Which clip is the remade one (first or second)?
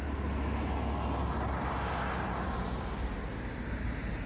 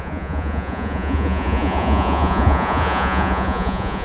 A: second